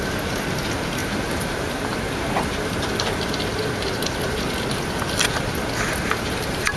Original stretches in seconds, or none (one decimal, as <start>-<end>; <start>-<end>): 0.0-1.0; 3.2-6.0